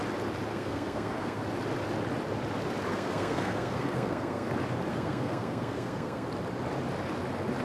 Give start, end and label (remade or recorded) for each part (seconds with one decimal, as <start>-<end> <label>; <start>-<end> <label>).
0.0-0.5 recorded; 0.5-1.4 remade; 1.4-2.9 recorded; 2.9-4.5 remade; 4.5-4.9 recorded; 4.9-6.3 remade; 6.3-7.6 recorded